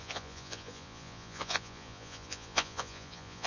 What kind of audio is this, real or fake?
fake